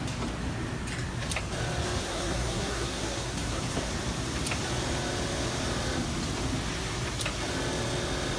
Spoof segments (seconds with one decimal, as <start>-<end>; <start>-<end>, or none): 2.0-3.6